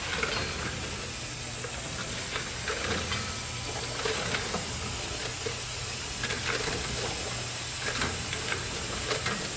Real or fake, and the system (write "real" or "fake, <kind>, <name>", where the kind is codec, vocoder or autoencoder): real